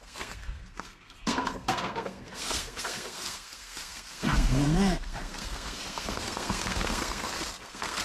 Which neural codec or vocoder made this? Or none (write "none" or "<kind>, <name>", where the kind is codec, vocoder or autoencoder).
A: codec, SNAC